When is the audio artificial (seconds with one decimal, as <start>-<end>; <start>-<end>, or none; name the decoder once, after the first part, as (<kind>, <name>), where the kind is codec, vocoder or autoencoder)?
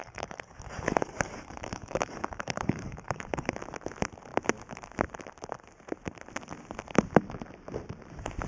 0.0-3.6 (codec, DAC)